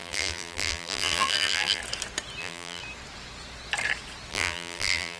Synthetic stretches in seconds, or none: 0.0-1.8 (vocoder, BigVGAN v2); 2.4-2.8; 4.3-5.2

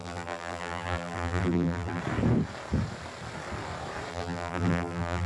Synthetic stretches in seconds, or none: 0.0-2.0 (vocoder, BigVGAN v2); 4.1-5.3

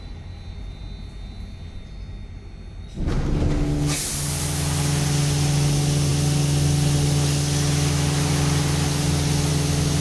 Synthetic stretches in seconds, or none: none

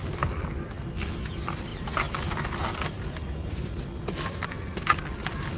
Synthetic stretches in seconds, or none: none

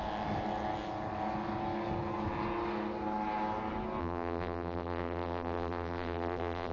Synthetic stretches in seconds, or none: 4.0-6.7 (vocoder, BigVGAN v2)

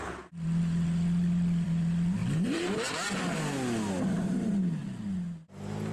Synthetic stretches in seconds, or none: 0.0-0.6 (vocoder, BigVGAN v2); 2.2-3.1